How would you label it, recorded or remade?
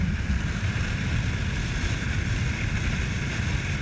recorded